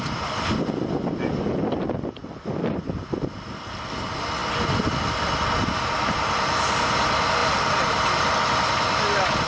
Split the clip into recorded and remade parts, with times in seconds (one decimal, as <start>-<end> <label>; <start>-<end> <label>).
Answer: 0.0-9.5 recorded